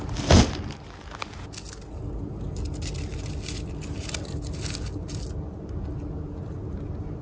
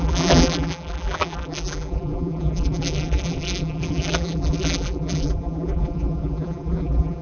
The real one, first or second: first